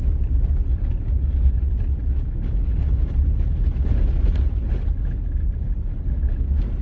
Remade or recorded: recorded